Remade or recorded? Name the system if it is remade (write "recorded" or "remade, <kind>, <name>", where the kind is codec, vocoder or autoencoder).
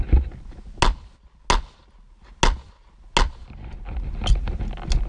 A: recorded